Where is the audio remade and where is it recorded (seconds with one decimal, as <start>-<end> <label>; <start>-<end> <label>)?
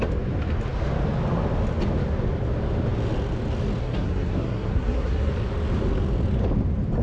0.0-3.8 recorded; 3.8-5.3 remade; 5.3-7.0 recorded